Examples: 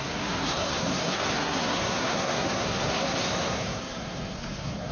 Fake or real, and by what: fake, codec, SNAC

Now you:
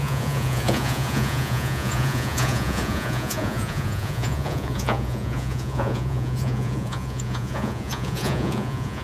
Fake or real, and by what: fake, vocoder, Vocos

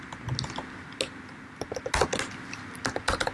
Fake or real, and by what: real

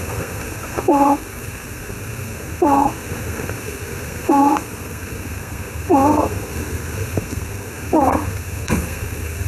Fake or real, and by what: fake, codec, SNAC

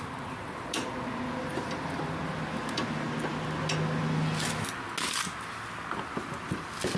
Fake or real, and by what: real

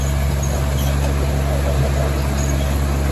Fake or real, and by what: real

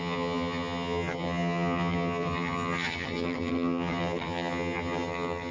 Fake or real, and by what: fake, vocoder, HiFi-GAN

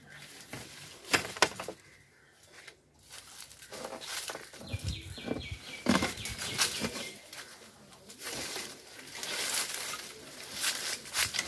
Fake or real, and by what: real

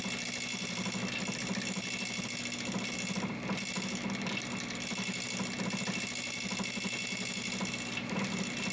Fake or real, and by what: real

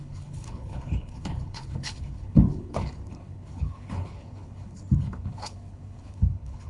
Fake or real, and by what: fake, codec, HILCodec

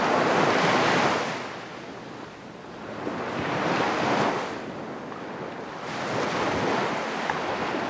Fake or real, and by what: real